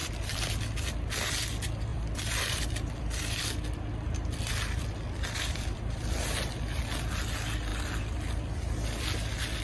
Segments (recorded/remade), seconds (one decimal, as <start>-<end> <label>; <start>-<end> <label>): 0.0-0.9 remade; 0.9-1.9 recorded; 1.9-6.8 remade; 6.8-9.6 recorded